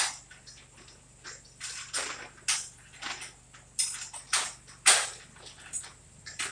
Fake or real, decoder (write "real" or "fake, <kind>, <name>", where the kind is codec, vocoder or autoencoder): real